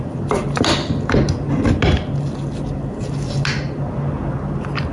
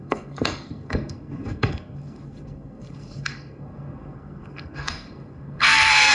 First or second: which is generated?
second